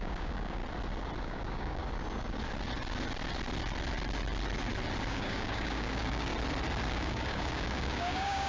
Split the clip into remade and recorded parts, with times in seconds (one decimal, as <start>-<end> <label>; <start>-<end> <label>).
0.0-0.6 remade; 0.6-1.2 recorded; 1.2-1.8 remade; 1.8-5.1 recorded; 5.1-6.3 remade; 6.3-6.9 recorded; 6.9-8.5 remade